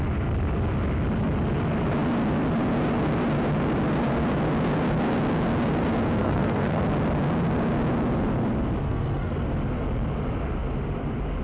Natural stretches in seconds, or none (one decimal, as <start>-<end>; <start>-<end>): 0.0-6.2; 6.8-8.8; 9.3-11.4